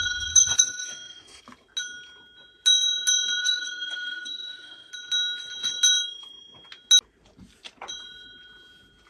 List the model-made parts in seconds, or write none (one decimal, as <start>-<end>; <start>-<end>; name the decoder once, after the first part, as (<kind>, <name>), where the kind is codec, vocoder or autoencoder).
0.0-1.4 (autoencoder, DAC-VAE); 3.4-4.9